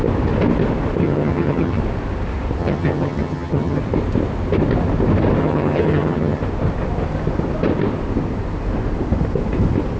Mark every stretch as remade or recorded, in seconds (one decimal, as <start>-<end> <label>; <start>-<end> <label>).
0.0-1.0 recorded; 1.0-1.8 remade; 1.8-2.6 recorded; 2.6-3.8 remade; 3.8-5.4 recorded; 5.4-6.4 remade; 6.4-10.0 recorded